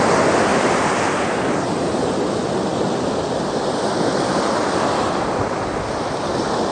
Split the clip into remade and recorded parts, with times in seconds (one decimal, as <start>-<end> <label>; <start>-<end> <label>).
0.0-0.5 recorded; 0.5-2.0 remade; 2.0-6.7 recorded